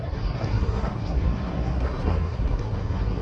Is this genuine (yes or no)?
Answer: no